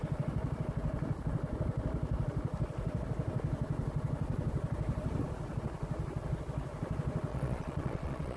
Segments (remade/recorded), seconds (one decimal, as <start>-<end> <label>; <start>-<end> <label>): 0.0-7.3 recorded; 7.3-8.4 remade